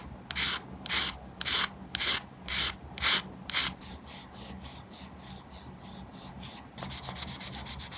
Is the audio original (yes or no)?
yes